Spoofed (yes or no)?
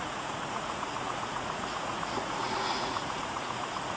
yes